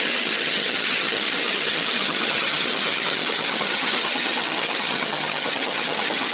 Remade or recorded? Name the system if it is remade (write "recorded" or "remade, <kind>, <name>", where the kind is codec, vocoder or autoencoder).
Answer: remade, vocoder, HiFi-GAN